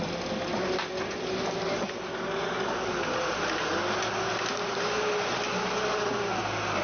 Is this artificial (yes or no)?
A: no